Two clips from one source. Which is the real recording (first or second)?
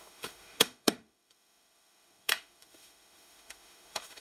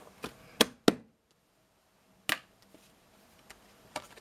second